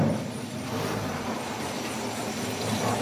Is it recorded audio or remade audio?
recorded